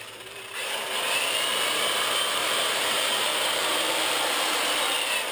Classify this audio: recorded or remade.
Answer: remade